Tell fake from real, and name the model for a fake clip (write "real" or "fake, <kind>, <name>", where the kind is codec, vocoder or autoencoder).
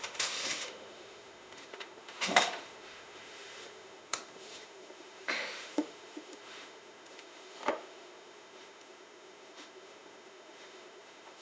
fake, autoencoder, DAC-VAE